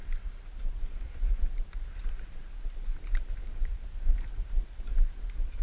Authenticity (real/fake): fake